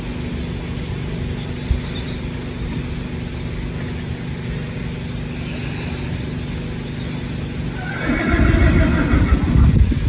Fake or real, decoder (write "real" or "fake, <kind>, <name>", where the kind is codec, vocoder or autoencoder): real